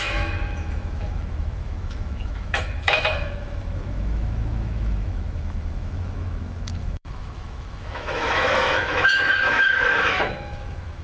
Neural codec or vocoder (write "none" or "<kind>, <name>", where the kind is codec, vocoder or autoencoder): autoencoder, DAC-VAE